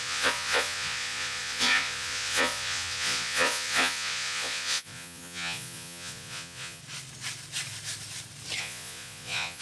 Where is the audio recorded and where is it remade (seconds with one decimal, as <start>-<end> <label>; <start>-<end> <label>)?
0.0-6.8 remade; 6.8-8.6 recorded; 8.6-9.6 remade